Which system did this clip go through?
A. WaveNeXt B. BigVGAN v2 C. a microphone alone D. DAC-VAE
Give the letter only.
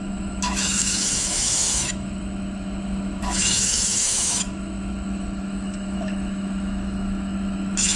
D